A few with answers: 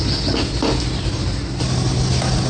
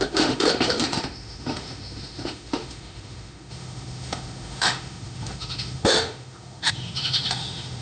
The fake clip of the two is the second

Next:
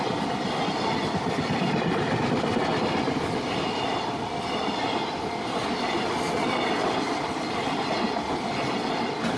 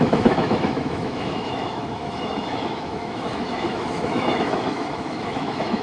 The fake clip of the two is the second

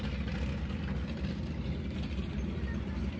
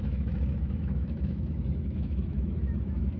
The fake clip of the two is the second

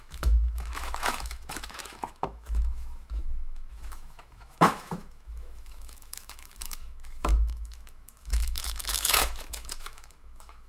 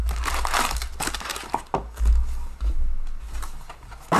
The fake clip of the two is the first